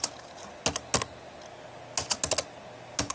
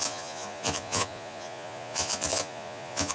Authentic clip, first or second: first